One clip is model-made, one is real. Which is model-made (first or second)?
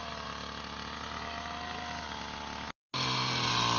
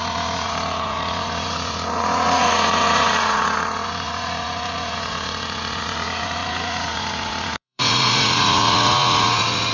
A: second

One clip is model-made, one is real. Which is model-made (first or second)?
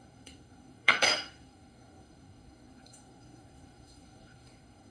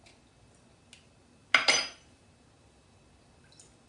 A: first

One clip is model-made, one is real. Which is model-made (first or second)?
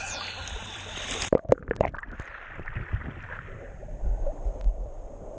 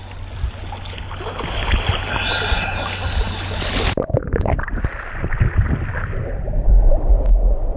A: first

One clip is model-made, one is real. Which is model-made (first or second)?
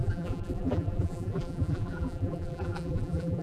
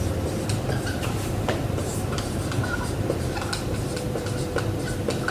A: first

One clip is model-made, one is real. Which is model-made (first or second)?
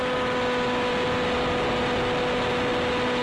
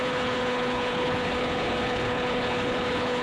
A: second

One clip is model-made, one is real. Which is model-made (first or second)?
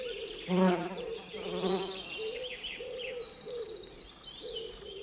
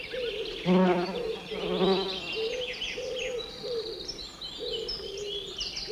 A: first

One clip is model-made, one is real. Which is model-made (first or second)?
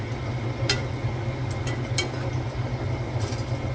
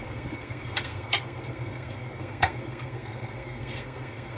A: second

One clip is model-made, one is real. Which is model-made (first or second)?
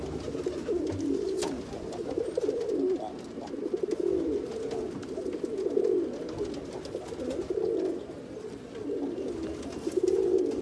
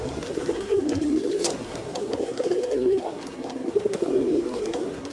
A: second